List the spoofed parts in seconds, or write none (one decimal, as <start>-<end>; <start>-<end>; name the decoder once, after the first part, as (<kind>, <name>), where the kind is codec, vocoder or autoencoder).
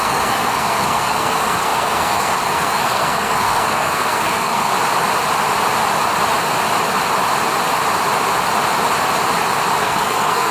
0.0-4.7 (codec, SNAC); 9.8-10.5